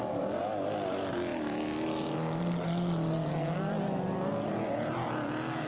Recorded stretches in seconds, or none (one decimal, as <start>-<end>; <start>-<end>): 0.0-5.7